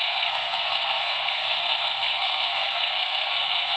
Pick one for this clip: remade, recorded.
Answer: remade